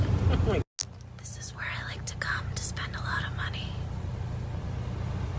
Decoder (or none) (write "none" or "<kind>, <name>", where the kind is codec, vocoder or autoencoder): none